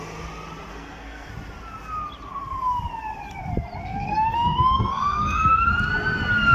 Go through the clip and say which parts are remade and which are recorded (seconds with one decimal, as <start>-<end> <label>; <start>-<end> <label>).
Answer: 0.0-0.7 recorded; 0.7-1.3 remade; 1.3-3.8 recorded; 3.8-5.7 remade; 5.7-6.5 recorded